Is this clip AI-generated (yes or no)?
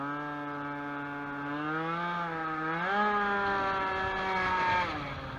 no